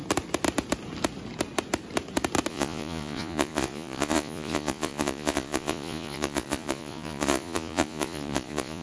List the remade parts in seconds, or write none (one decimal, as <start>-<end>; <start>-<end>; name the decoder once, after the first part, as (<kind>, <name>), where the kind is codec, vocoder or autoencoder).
2.5-8.8 (vocoder, Vocos)